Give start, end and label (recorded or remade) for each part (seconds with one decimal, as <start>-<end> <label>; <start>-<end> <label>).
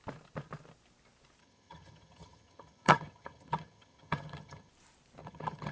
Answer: 0.0-1.4 recorded; 1.4-4.7 remade; 4.7-5.2 recorded; 5.2-5.7 remade